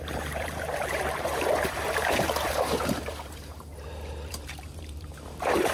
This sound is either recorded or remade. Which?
remade